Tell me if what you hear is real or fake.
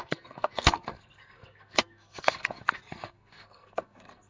fake